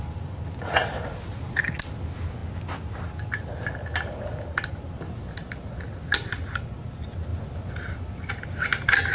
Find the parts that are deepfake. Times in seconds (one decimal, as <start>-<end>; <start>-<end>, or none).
none